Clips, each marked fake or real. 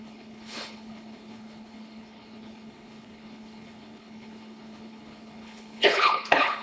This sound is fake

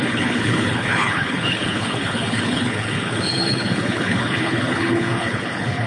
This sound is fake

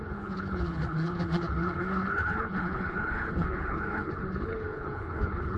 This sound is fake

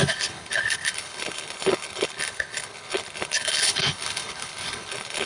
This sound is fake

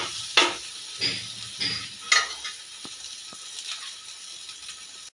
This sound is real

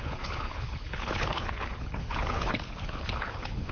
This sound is fake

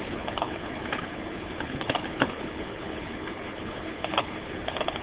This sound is fake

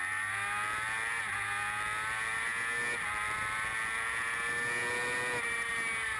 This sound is real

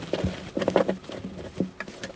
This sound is real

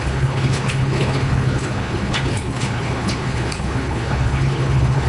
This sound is fake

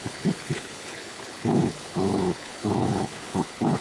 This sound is fake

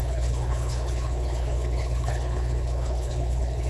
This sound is fake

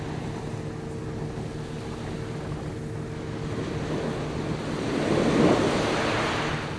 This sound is real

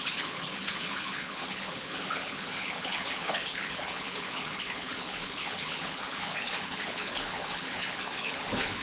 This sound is fake